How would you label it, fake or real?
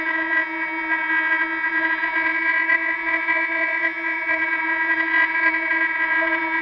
fake